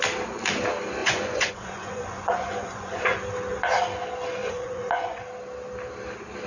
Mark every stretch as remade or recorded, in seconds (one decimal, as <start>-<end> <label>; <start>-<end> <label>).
0.0-1.0 recorded; 1.0-3.2 remade; 3.2-4.4 recorded; 4.4-5.2 remade; 5.2-6.5 recorded